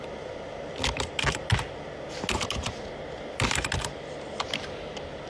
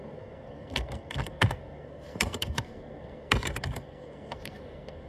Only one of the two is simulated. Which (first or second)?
second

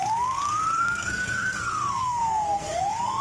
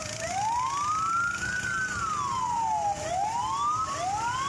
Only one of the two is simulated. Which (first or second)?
first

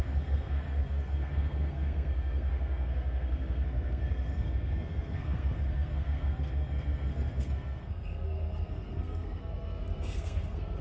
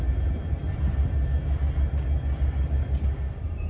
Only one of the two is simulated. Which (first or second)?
first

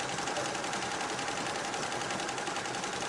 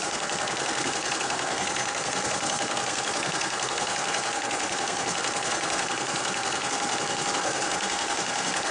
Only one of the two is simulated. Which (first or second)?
second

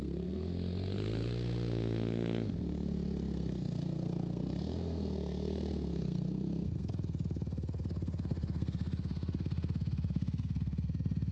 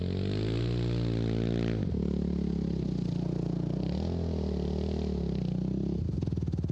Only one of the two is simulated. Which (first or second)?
first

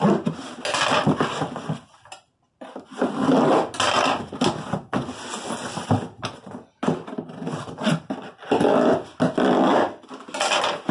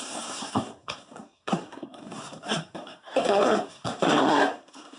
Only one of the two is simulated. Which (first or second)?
second